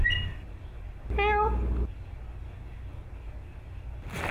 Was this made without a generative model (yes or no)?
yes